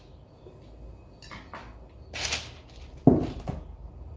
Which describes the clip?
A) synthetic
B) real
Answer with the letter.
B